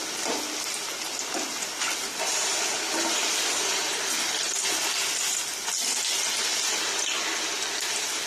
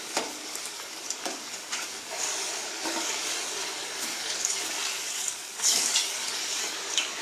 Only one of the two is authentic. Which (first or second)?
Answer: first